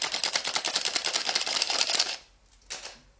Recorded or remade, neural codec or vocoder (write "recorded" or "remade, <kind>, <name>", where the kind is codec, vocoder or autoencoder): recorded